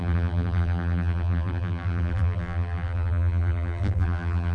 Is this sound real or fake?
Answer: fake